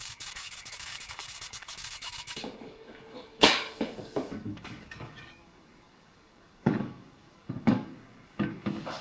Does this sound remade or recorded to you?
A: remade